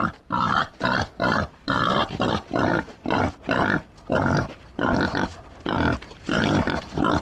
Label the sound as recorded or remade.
remade